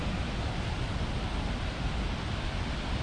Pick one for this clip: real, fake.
real